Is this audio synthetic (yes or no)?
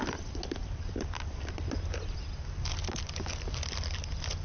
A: no